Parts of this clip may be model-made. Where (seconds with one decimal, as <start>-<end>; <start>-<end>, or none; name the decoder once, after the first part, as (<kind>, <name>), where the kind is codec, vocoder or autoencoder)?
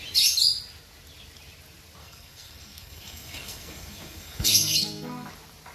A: 2.0-5.3 (codec, SNAC)